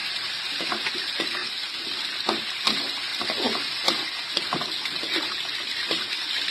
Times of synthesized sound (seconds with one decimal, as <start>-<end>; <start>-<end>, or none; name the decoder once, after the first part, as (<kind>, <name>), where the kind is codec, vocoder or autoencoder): 0.0-0.7 (vocoder, BigVGAN v2)